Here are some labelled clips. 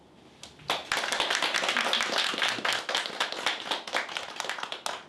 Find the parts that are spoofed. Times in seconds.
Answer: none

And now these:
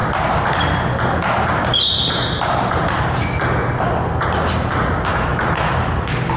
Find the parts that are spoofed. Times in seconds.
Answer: 5.1-5.8 (autoencoder, DAC-VAE)

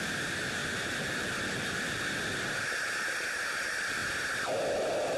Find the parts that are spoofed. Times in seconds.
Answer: none

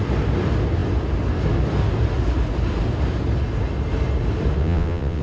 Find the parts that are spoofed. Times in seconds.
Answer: 4.6-5.2 (vocoder, WaveNeXt)

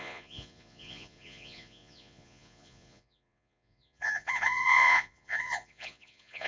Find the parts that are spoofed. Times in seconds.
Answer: 0.0-6.5 (vocoder, Vocos)

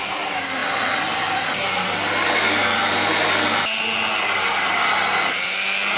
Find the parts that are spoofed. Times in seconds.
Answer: none

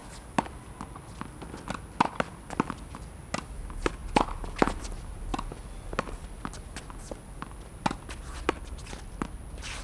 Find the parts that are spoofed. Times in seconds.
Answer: none

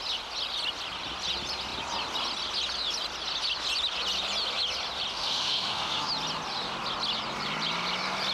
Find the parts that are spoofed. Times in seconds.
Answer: 5.1-6.1 (autoencoder, DAC-VAE)